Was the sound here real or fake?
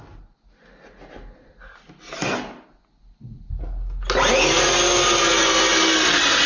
real